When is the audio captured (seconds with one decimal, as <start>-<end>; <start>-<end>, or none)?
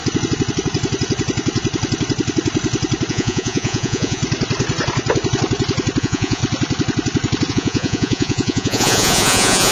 0.0-3.1; 4.2-6.0; 6.4-7.5